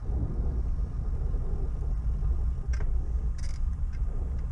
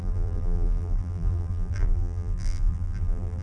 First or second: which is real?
first